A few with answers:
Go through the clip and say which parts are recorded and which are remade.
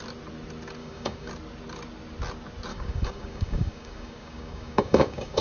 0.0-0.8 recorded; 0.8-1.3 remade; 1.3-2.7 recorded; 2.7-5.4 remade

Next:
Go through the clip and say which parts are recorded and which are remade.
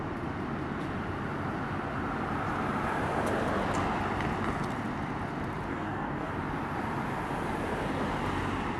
0.0-5.7 recorded; 5.7-6.3 remade; 6.3-8.8 recorded